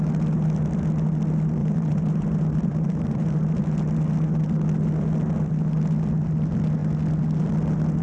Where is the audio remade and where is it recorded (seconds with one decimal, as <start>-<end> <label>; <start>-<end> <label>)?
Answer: 0.0-1.6 recorded; 1.6-3.6 remade; 3.6-8.0 recorded